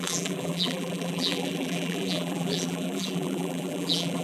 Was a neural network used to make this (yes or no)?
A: yes